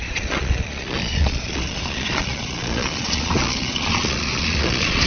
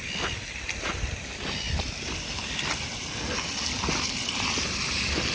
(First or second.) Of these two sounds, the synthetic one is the first